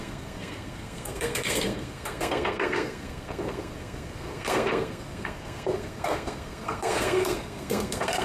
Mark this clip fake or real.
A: fake